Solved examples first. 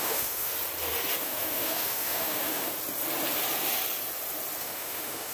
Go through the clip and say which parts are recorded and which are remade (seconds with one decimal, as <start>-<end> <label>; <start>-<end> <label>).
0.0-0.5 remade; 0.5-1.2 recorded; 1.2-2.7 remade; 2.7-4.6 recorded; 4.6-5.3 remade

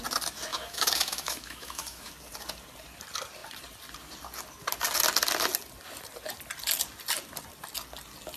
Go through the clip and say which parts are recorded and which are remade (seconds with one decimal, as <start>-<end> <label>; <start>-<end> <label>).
0.0-0.5 recorded; 0.5-2.1 remade; 2.1-8.4 recorded

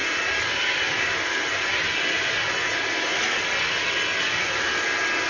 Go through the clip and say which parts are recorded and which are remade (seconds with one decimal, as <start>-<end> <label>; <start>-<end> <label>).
0.0-5.3 recorded

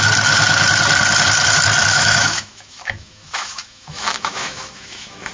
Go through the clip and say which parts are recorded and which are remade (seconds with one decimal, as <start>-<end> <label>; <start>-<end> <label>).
0.0-1.9 recorded; 1.9-5.3 remade